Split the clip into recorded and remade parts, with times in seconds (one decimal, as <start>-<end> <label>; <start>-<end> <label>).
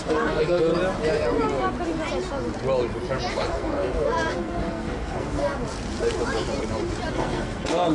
0.0-0.7 remade; 0.7-3.3 recorded; 3.3-5.4 remade; 5.4-7.1 recorded; 7.1-7.9 remade